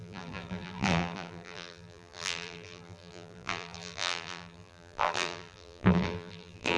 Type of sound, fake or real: fake